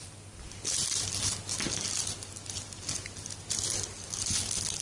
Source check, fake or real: real